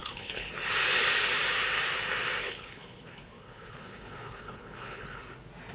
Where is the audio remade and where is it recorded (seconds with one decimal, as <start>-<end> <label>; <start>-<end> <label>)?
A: 0.0-0.5 remade; 0.5-2.4 recorded; 2.4-5.2 remade; 5.2-5.7 recorded